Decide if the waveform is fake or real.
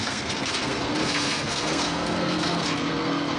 fake